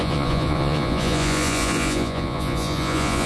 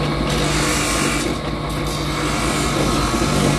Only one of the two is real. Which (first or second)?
second